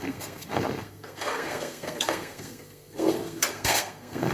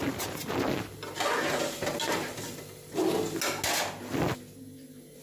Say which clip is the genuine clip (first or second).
second